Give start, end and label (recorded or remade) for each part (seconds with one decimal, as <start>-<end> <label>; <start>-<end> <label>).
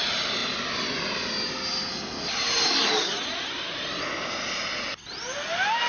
0.0-5.9 recorded